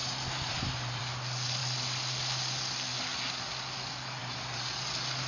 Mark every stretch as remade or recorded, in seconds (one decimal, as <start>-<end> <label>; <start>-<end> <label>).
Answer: 0.0-1.0 remade; 1.0-4.2 recorded; 4.2-4.7 remade; 4.7-5.3 recorded